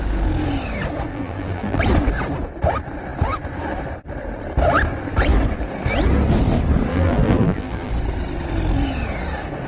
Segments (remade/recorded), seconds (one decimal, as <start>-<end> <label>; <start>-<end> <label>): 0.0-1.1 recorded; 1.1-1.8 remade; 1.8-6.9 recorded; 6.9-7.9 remade; 7.9-9.7 recorded